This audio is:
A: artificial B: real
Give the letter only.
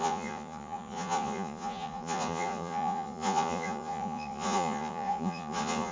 A